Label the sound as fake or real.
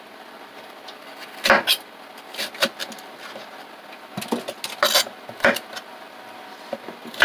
real